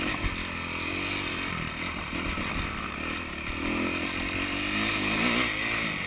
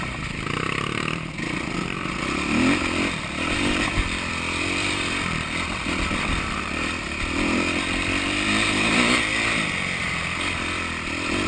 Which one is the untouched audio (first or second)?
first